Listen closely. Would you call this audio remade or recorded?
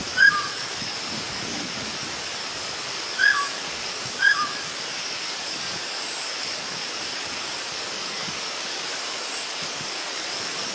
remade